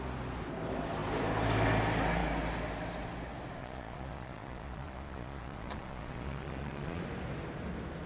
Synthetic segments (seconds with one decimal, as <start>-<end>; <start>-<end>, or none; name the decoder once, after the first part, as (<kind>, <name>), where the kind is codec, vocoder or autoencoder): 3.6-7.0 (vocoder, Vocos)